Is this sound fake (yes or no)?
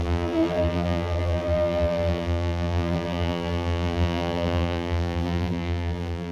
yes